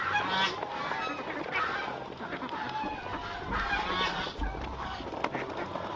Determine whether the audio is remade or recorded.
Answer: recorded